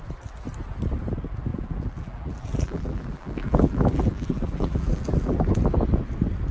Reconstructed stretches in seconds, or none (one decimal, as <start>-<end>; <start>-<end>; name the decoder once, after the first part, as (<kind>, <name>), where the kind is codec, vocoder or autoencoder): 1.5-5.4 (vocoder, BigVGAN v2)